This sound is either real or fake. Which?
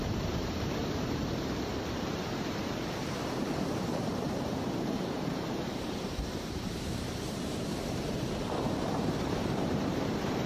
fake